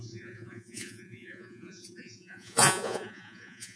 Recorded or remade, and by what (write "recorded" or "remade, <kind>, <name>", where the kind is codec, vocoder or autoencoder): remade, vocoder, Vocos